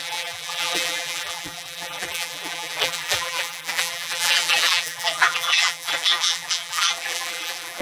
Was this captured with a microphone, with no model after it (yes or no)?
no